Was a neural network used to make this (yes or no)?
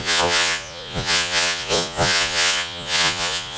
yes